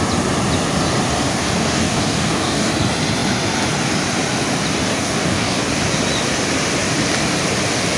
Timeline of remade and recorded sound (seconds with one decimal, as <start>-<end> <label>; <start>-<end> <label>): 0.0-1.3 recorded; 1.3-2.7 remade; 2.7-4.9 recorded; 4.9-5.6 remade; 5.6-8.0 recorded